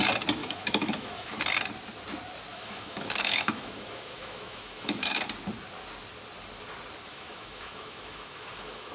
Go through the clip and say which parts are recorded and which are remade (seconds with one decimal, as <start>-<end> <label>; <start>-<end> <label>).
0.0-0.4 recorded; 0.4-1.4 remade; 1.4-2.5 recorded; 2.5-5.2 remade; 5.2-7.1 recorded; 7.1-8.9 remade